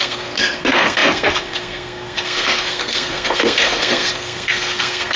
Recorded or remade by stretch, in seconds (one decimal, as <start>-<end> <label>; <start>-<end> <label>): 0.0-5.2 remade